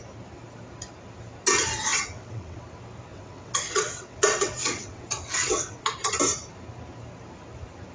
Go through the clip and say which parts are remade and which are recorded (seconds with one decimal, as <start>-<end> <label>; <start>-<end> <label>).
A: 0.0-1.9 recorded; 1.9-2.6 remade; 2.6-3.1 recorded; 3.1-5.8 remade; 5.8-7.9 recorded